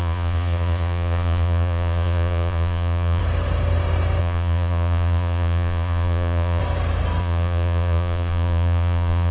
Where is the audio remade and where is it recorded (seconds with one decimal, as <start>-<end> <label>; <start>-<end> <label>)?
0.0-3.2 remade; 3.2-4.2 recorded; 4.2-6.6 remade; 6.6-7.2 recorded; 7.2-9.3 remade